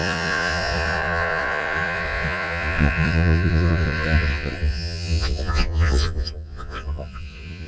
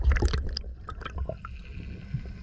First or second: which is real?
second